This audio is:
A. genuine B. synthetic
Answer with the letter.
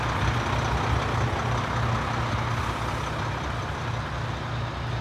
A